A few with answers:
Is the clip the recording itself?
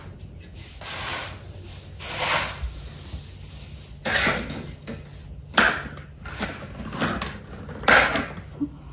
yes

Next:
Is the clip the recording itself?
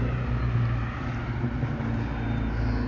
yes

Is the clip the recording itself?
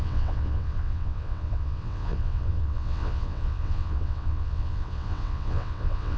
no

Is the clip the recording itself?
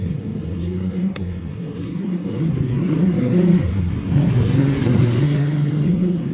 no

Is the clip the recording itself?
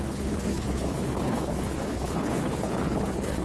no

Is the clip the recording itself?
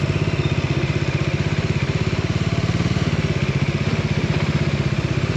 yes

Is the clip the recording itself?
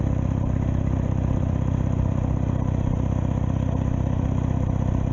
yes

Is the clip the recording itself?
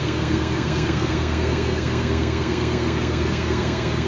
no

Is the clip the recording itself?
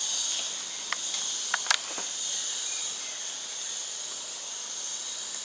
yes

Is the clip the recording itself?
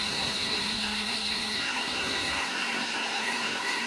no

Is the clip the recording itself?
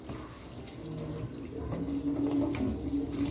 yes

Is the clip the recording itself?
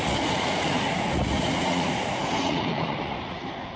no